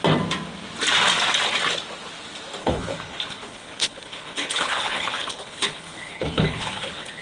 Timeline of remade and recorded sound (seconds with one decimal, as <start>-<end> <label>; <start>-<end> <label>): 0.0-2.6 recorded; 2.6-7.2 remade